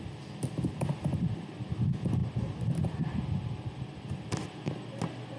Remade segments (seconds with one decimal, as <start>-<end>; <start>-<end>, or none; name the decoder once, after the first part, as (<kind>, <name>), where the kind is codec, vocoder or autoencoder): none